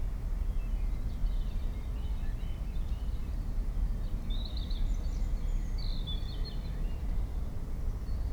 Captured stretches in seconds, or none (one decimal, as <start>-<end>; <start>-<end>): 0.0-8.3